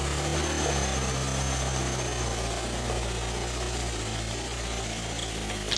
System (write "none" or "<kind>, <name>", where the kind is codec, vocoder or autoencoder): none